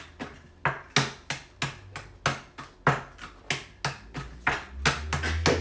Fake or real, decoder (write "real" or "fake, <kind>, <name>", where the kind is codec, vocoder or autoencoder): real